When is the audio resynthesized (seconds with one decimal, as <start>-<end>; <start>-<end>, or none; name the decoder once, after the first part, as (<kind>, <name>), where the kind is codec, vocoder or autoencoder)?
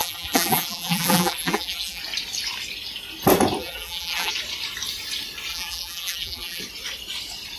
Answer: 0.0-2.0 (vocoder, BigVGAN v2); 3.6-4.3; 5.5-6.6